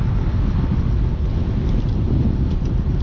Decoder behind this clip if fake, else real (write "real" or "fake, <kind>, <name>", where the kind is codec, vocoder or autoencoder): real